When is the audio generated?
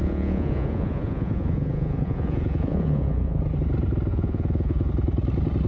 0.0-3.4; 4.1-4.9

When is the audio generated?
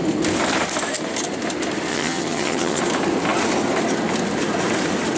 1.9-2.8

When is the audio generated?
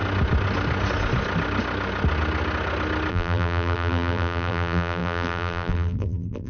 3.1-6.5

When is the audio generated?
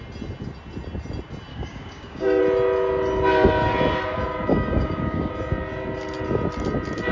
1.5-2.4; 4.5-5.3